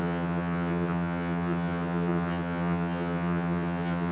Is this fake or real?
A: fake